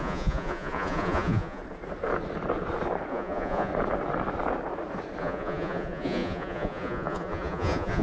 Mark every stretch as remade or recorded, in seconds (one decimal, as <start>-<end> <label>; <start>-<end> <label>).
0.0-1.6 remade; 1.6-3.1 recorded; 3.1-3.7 remade; 3.7-5.2 recorded; 5.2-8.0 remade